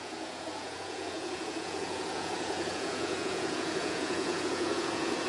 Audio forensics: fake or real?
fake